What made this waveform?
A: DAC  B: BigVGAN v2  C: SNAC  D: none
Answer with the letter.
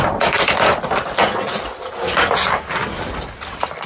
D